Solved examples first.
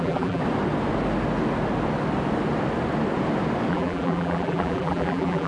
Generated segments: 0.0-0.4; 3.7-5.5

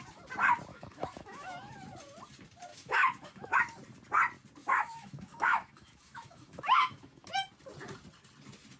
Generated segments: 0.7-1.7; 2.7-3.6; 4.6-7.3

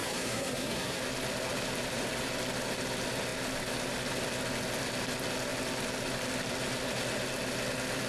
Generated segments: 0.0-1.0